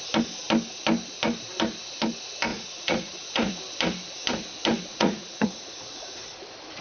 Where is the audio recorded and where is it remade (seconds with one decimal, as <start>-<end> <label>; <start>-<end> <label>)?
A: 0.0-2.5 recorded; 2.5-3.6 remade; 3.6-4.9 recorded; 4.9-6.2 remade; 6.2-6.8 recorded